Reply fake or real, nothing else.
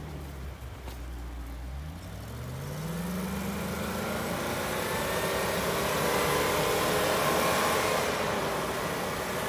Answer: real